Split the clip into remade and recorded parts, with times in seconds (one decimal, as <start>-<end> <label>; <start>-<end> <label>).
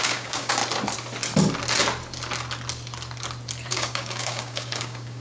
0.0-0.6 remade; 0.6-3.7 recorded; 3.7-5.2 remade